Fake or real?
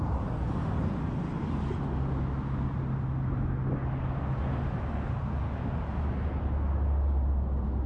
real